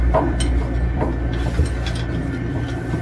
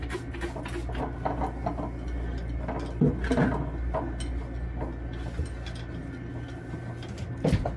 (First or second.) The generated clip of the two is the first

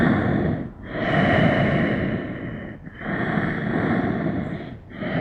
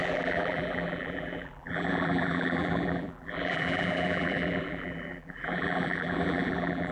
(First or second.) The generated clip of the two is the second